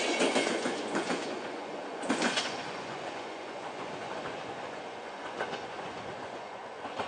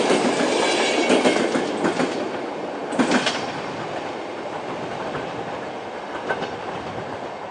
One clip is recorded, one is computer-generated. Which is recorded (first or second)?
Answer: second